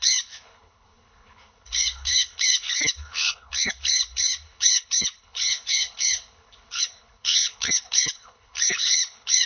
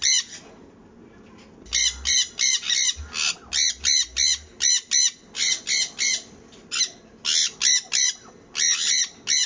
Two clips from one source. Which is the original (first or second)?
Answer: second